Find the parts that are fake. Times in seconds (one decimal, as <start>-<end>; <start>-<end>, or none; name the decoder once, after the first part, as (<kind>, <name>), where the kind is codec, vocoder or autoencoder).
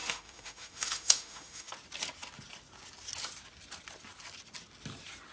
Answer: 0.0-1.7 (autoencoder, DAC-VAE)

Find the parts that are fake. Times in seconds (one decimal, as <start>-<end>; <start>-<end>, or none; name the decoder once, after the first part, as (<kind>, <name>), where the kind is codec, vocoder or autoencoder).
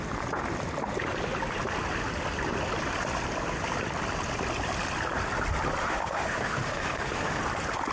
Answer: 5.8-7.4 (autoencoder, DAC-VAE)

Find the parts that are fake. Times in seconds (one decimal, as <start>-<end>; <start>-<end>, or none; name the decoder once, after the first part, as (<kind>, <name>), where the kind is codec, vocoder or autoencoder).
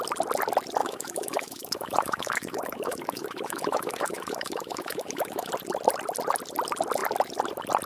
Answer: 0.8-5.5 (autoencoder, DAC-VAE)